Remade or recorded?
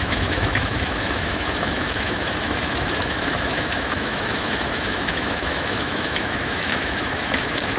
remade